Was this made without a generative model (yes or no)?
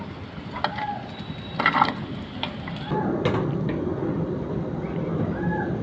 yes